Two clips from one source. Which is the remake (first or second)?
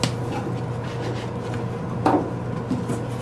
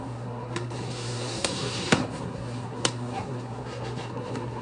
second